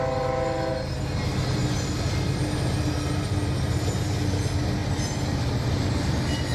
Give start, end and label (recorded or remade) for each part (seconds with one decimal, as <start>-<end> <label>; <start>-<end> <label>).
0.0-4.8 recorded; 4.8-6.1 remade; 6.1-6.5 recorded